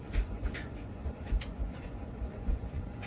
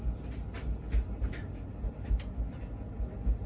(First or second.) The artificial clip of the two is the first